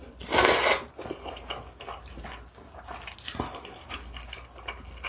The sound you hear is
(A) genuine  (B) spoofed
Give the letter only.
A